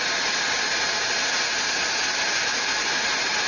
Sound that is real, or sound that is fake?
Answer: real